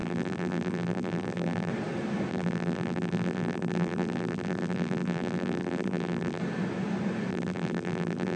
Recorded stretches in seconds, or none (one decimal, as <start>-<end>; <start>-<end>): 1.7-2.3; 6.4-7.3